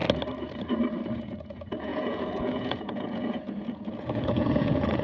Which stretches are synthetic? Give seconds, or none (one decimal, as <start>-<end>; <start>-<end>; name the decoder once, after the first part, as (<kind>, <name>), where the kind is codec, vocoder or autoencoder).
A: 1.2-5.0 (vocoder, Vocos)